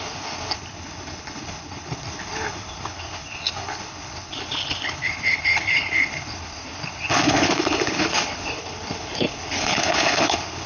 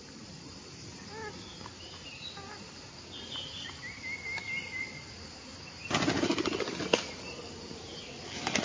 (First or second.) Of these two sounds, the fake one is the first